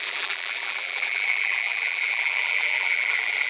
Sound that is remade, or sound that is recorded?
remade